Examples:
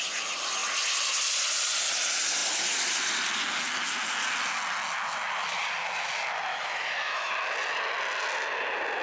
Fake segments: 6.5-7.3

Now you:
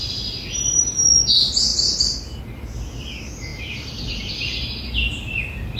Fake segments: none

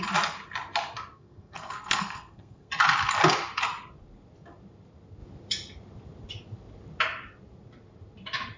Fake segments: 1.1-2.7

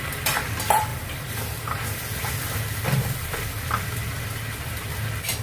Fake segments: 0.9-4.1